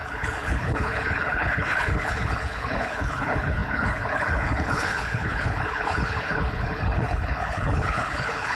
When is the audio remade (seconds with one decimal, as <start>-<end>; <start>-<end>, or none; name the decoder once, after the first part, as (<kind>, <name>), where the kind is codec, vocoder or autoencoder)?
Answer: 0.0-8.6 (codec, HILCodec)